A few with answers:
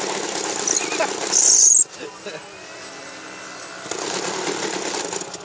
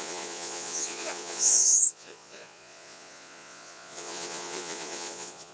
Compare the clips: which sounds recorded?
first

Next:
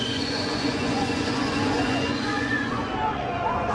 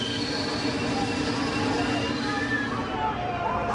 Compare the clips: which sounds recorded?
second